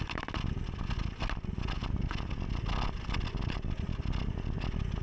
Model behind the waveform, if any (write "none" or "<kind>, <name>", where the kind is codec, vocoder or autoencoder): none